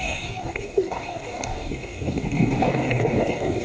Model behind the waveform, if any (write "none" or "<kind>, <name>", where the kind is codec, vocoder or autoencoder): codec, DAC